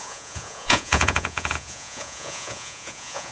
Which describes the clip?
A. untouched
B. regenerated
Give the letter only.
B